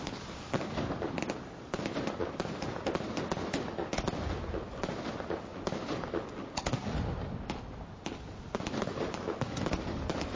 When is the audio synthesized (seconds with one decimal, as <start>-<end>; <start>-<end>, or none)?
none